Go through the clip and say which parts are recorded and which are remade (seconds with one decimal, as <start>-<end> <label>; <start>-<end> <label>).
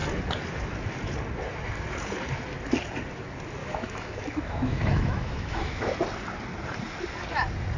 0.0-3.6 recorded; 3.6-5.9 remade; 5.9-7.8 recorded